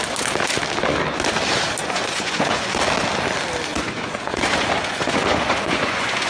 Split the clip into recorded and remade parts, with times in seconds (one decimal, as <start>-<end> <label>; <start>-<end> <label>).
0.0-1.8 recorded; 1.8-2.8 remade; 2.8-3.7 recorded; 3.7-6.3 remade